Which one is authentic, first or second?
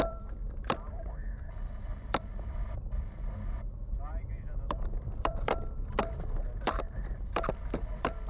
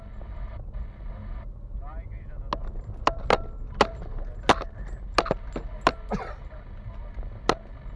second